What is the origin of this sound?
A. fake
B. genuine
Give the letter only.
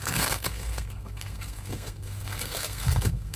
A